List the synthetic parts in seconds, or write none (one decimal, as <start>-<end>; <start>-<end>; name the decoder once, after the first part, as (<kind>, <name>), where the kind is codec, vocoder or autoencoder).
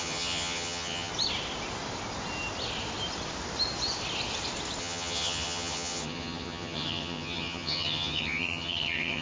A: 0.0-1.1 (vocoder, HiFi-GAN); 4.8-9.2